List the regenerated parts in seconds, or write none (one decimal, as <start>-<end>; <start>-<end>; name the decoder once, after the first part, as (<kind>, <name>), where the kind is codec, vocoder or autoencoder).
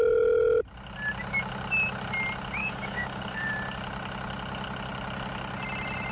2.6-3.5 (codec, DAC)